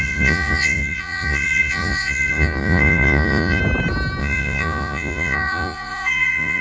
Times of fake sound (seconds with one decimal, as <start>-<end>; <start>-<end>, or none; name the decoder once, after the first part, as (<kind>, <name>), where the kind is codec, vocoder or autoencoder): 0.0-3.6 (vocoder, Vocos); 4.2-6.6